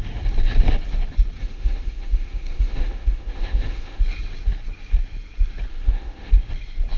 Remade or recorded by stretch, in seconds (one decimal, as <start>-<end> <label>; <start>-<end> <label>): 0.0-1.4 recorded; 1.4-4.0 remade; 4.0-5.7 recorded; 5.7-6.3 remade; 6.3-7.0 recorded